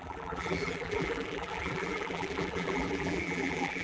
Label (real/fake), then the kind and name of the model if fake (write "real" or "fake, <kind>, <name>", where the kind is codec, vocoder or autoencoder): fake, vocoder, BigVGAN v2